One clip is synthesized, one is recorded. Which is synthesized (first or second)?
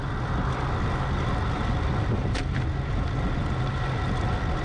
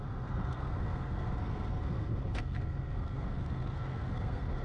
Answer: second